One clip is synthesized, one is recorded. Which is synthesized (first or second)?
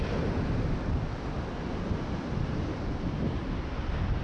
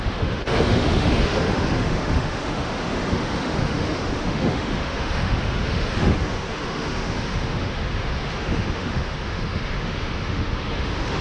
second